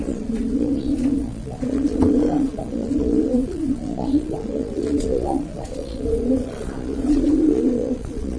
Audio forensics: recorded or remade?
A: remade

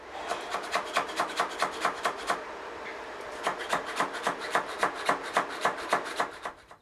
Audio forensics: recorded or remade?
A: remade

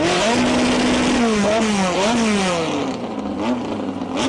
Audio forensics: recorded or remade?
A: recorded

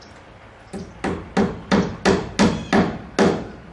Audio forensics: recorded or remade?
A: recorded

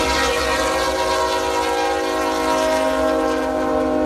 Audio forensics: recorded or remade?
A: recorded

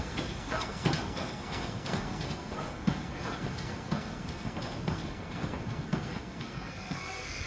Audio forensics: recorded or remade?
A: remade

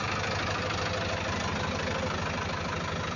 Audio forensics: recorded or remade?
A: recorded